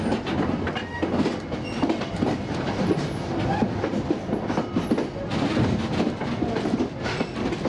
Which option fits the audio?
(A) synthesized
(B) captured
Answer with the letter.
B